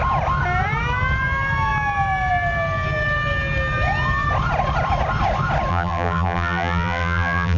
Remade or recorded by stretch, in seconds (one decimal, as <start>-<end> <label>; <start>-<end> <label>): 0.0-5.7 recorded; 5.7-7.6 remade